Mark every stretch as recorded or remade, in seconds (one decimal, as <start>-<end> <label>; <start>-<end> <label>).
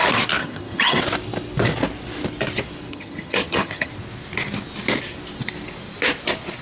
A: 0.0-0.4 recorded; 0.4-1.0 remade; 1.0-2.9 recorded; 2.9-3.9 remade; 3.9-6.6 recorded